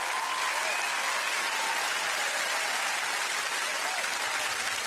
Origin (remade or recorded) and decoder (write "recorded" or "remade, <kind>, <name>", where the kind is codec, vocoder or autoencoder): recorded